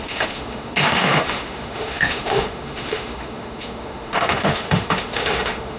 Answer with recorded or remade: remade